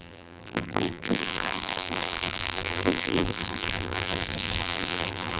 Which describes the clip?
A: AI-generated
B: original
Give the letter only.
A